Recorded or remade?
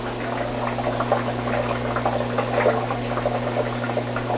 recorded